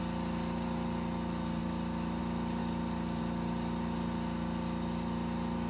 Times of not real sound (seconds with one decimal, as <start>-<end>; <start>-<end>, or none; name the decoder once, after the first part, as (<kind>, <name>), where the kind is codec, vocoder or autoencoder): none